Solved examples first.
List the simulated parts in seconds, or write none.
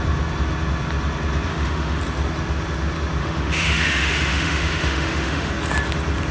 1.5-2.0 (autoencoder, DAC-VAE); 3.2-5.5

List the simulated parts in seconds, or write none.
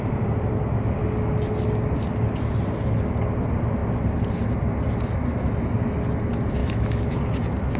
6.6-7.2 (autoencoder, DAC-VAE)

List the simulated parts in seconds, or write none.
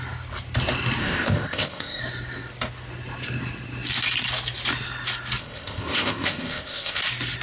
1.0-2.0 (codec, ZipCodec); 5.4-7.0